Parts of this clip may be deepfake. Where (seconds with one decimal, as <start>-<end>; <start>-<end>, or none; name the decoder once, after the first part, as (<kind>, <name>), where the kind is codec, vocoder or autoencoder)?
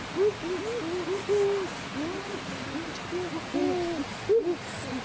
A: none